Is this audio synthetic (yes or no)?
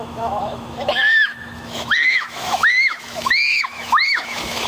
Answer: yes